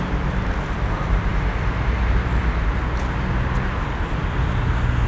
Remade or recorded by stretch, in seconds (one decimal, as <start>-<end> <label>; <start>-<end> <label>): 0.0-5.1 recorded